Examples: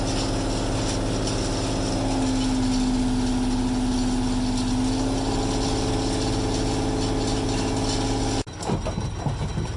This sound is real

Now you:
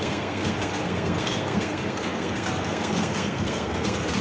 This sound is fake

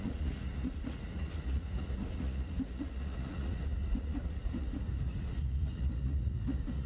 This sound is fake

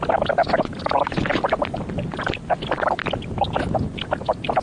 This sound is real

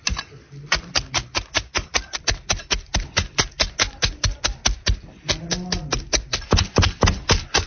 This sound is real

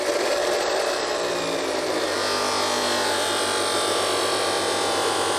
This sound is real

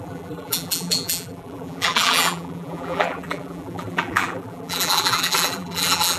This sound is fake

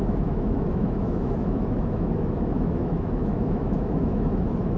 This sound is fake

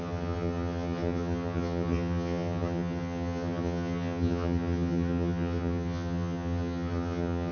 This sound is fake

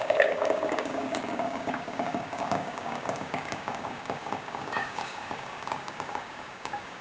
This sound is fake